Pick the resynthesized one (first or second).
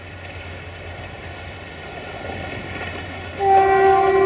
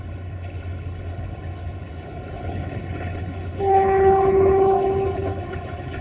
second